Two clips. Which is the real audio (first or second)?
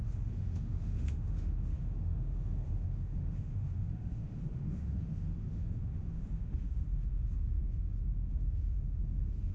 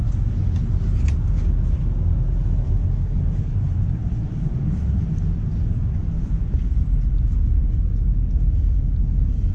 second